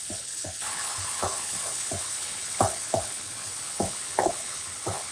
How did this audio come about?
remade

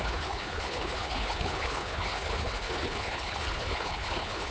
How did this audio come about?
remade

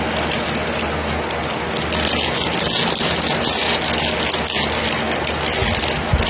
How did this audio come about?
recorded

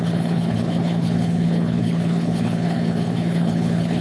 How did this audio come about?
remade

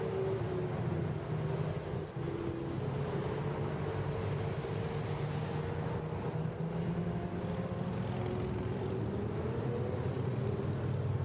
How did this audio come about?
recorded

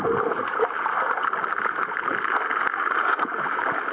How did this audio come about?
recorded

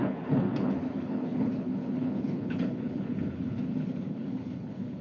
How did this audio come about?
remade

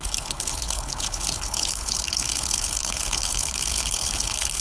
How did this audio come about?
remade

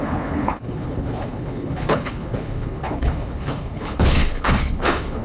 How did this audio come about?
remade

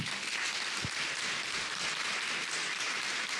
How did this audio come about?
recorded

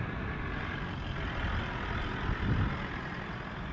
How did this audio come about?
recorded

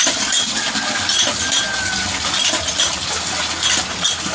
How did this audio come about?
recorded